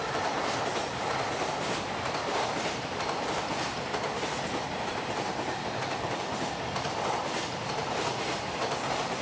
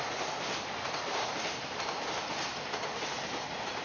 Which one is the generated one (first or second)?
first